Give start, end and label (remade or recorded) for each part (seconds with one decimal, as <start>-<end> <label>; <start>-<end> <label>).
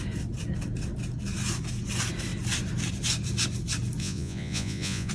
0.0-4.0 recorded; 4.0-5.1 remade